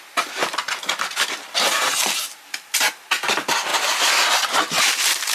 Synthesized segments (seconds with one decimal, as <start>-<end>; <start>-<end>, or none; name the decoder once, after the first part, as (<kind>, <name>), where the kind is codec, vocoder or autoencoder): none